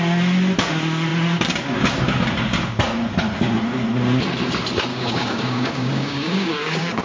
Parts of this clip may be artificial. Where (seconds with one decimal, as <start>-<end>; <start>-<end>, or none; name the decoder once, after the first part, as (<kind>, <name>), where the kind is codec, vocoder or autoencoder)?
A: 4.9-7.0 (codec, DAC)